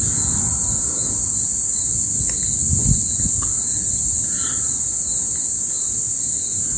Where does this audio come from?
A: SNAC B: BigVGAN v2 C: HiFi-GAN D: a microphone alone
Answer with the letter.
D